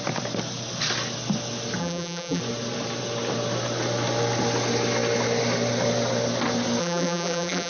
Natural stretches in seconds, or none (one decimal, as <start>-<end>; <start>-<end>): 0.0-1.8; 2.4-6.8